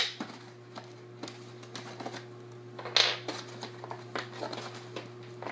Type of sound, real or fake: real